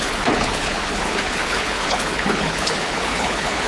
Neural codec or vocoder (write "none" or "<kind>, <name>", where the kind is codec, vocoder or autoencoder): codec, HILCodec